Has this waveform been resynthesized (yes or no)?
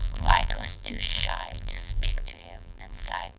yes